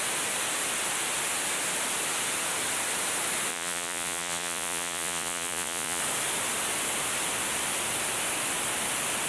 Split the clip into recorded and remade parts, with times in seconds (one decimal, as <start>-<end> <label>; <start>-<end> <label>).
0.0-3.5 recorded; 3.5-6.0 remade; 6.0-9.3 recorded